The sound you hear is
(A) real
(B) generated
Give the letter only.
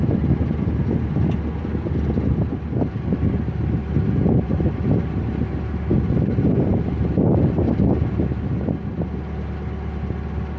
A